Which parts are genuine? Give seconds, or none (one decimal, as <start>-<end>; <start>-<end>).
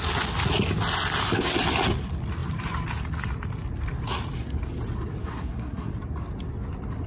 0.0-5.2; 5.9-7.1